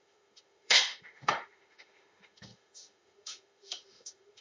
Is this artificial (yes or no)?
yes